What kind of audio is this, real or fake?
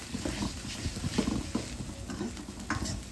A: real